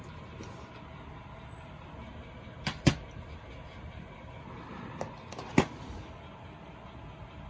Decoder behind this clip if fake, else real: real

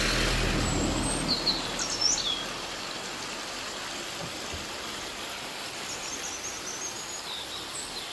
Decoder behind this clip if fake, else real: real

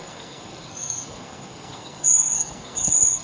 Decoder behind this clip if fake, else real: fake, codec, SNAC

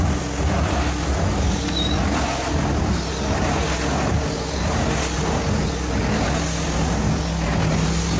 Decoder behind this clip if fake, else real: real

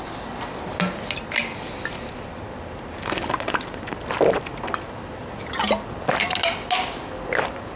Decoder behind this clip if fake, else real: real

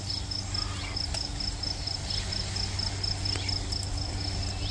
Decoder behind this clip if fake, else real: real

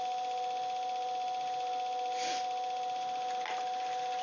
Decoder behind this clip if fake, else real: real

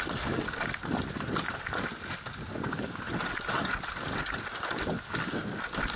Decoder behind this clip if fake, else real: real